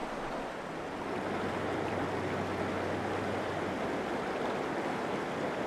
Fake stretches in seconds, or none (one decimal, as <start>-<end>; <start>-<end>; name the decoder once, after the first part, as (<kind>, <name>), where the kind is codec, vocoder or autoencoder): none

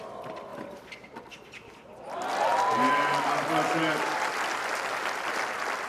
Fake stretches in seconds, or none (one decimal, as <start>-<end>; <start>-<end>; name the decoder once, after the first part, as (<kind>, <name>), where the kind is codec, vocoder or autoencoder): none

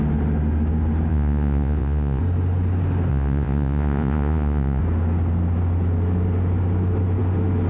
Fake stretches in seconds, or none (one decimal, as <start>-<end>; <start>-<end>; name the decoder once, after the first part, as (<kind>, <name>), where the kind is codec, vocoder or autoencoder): 1.1-2.2 (vocoder, Vocos); 3.1-4.8

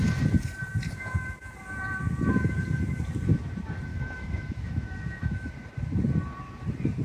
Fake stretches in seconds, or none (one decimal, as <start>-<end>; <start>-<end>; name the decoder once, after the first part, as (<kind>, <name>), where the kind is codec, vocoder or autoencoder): 3.9-5.5 (autoencoder, DAC-VAE)

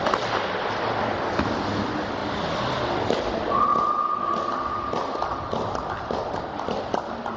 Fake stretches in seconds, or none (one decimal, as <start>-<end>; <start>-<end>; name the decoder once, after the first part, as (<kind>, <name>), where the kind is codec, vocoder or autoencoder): none

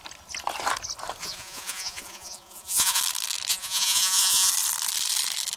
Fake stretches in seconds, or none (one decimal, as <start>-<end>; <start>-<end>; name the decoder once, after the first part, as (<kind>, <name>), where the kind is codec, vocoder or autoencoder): 1.2-3.0 (vocoder, Vocos); 3.5-4.5

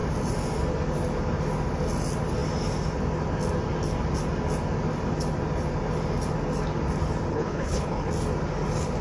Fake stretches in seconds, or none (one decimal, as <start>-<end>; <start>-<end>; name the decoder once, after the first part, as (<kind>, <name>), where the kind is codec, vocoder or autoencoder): 7.3-8.1 (codec, HILCodec)

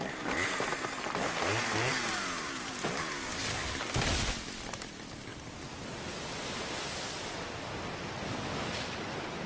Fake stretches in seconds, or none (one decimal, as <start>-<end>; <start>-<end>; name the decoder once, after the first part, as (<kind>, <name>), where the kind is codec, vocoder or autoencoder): none